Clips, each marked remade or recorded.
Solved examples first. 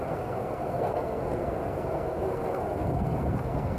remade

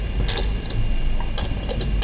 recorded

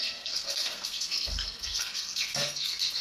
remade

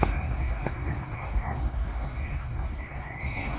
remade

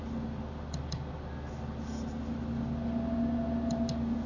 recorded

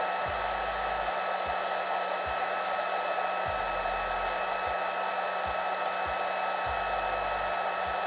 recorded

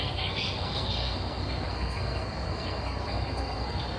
remade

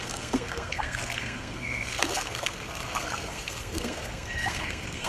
remade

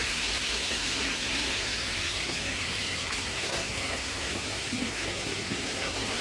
remade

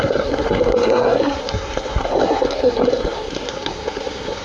remade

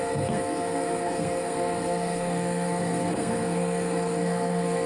remade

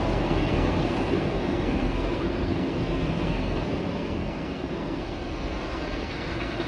remade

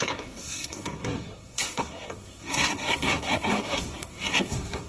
remade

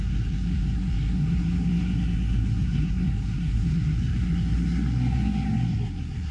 remade